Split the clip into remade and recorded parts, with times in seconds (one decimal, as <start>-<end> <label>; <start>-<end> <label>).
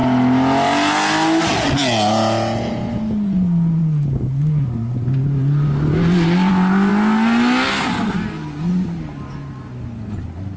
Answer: 0.0-10.6 recorded